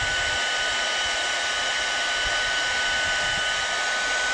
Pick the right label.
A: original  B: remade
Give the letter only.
A